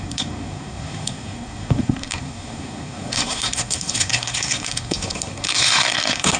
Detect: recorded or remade remade